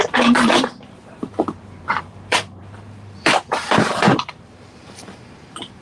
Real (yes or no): no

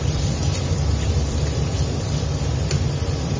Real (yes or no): no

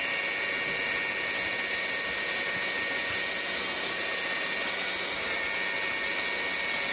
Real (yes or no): yes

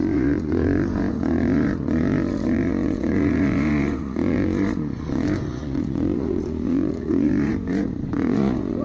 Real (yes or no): no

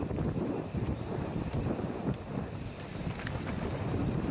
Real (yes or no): yes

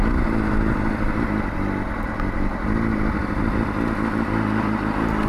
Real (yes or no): yes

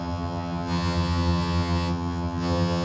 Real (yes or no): no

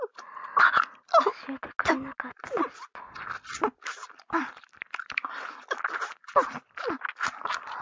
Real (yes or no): yes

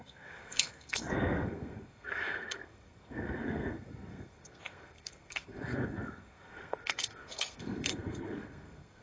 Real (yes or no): no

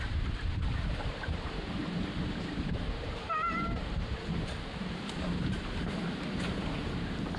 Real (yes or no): no